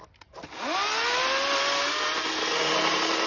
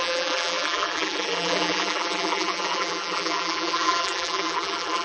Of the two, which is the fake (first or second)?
second